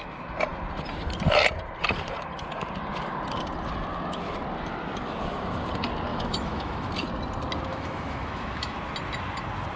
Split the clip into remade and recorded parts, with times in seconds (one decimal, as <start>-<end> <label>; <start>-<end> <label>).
0.0-6.1 recorded; 6.1-6.9 remade; 6.9-7.7 recorded; 7.7-8.8 remade; 8.8-9.8 recorded